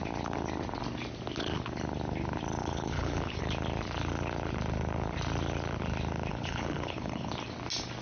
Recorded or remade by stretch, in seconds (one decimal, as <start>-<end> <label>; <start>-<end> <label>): 0.0-2.6 recorded; 2.6-3.4 remade; 3.4-6.3 recorded; 6.3-7.3 remade; 7.3-8.0 recorded